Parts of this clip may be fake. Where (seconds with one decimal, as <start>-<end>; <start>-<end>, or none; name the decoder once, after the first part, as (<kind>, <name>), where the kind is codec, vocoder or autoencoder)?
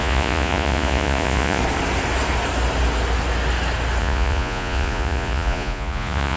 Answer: 0.0-1.6 (vocoder, Vocos); 4.0-6.4